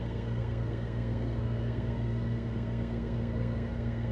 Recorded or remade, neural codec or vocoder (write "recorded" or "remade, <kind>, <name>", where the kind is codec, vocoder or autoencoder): remade, codec, SNAC